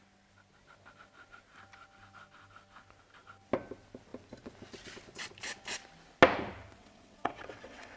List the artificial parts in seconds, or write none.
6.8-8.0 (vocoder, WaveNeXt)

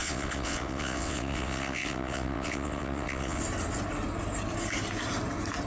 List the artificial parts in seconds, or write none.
0.0-3.4 (vocoder, WaveNeXt)